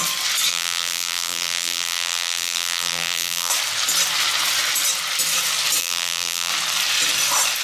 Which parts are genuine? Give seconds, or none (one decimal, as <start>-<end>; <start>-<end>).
0.0-0.5; 3.5-5.8; 6.5-7.6